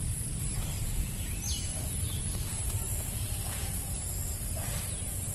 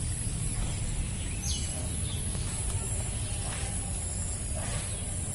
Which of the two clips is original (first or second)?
second